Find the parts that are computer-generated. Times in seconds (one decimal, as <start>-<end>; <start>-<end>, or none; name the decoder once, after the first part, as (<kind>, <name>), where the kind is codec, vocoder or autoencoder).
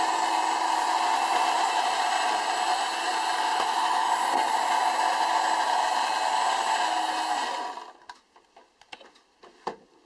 3.5-4.1 (autoencoder, DAC-VAE)